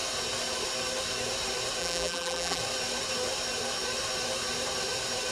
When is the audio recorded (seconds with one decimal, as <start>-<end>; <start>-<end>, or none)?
0.0-1.8; 2.6-5.3